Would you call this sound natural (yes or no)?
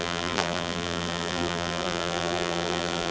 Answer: no